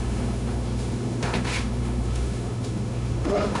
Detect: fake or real fake